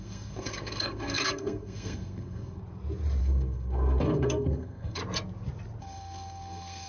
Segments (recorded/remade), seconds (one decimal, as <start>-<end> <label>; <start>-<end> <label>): 0.0-2.6 remade; 2.6-3.2 recorded; 3.2-5.0 remade; 5.0-5.8 recorded; 5.8-6.9 remade